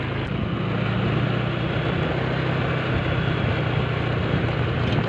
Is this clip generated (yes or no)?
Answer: no